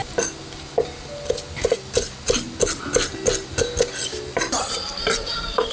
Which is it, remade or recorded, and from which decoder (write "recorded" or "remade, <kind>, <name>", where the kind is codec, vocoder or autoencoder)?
recorded